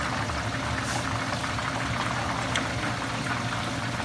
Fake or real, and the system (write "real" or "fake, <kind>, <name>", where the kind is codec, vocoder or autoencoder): real